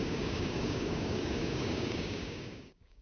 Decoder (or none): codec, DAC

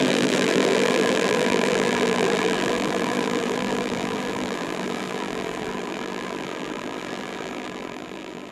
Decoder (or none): vocoder, BigVGAN v2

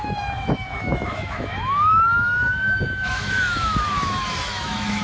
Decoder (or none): autoencoder, DAC-VAE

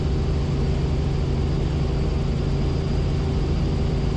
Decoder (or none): none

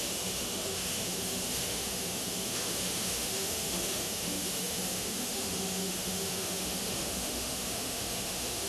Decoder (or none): autoencoder, DAC-VAE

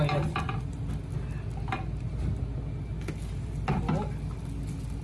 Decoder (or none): none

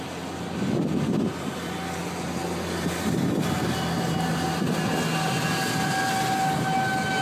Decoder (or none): none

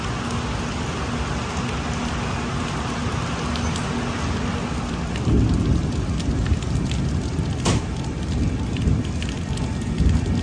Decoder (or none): none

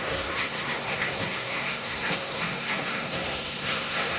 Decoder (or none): codec, SNAC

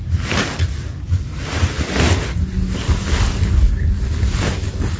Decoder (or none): none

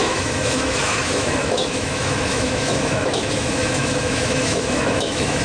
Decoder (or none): autoencoder, DAC-VAE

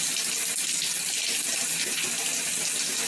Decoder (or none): none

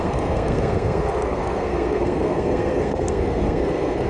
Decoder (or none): codec, SNAC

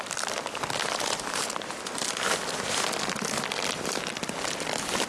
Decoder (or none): none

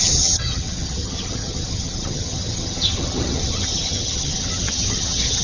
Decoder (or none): vocoder, HiFi-GAN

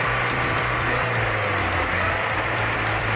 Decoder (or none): vocoder, BigVGAN v2